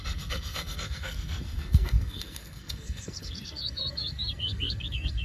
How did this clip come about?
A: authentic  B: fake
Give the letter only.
B